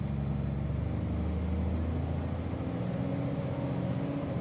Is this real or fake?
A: real